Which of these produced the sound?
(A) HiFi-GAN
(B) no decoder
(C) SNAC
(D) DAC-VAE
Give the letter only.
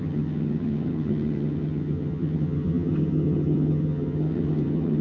A